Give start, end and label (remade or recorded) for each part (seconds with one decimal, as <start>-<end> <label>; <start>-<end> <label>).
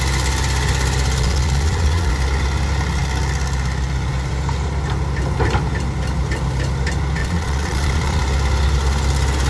0.0-1.2 recorded; 1.2-2.1 remade; 2.1-7.2 recorded; 7.2-8.2 remade; 8.2-9.5 recorded